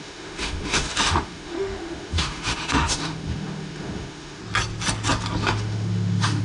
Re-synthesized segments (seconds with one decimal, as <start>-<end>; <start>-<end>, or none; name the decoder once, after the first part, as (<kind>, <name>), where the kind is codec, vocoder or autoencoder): 0.0-4.4 (autoencoder, DAC-VAE); 5.4-6.4